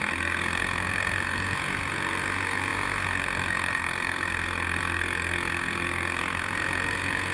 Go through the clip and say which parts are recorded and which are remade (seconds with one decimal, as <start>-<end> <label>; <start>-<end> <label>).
0.0-7.3 remade